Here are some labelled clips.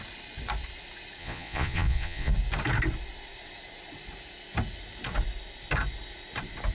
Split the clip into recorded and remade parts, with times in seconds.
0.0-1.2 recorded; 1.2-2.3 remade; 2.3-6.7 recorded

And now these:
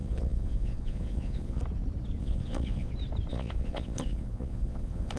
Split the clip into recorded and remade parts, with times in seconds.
0.0-1.6 remade; 1.6-2.2 recorded; 2.2-2.9 remade; 2.9-3.3 recorded; 3.3-5.2 remade

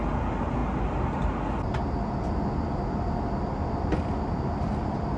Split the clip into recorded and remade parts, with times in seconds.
0.0-5.2 recorded

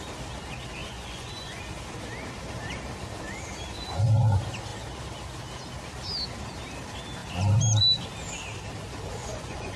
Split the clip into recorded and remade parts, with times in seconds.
0.0-0.8 recorded; 0.8-1.6 remade; 1.6-9.2 recorded; 9.2-9.8 remade

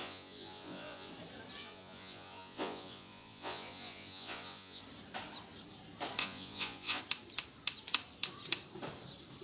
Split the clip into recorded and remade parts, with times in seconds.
0.0-1.1 remade; 1.1-1.6 recorded; 1.6-4.8 remade; 4.8-6.2 recorded; 6.2-7.0 remade; 7.0-9.4 recorded

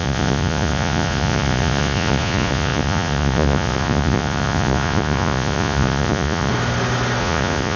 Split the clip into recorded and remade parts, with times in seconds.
0.0-6.5 remade; 6.5-7.2 recorded; 7.2-7.8 remade